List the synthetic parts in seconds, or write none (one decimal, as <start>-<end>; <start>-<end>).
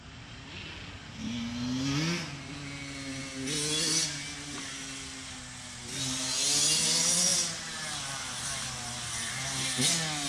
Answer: none